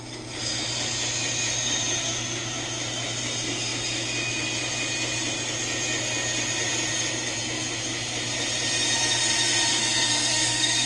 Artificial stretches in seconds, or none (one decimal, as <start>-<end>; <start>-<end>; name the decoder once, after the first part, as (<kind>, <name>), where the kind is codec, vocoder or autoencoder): 9.7-10.9 (codec, SNAC)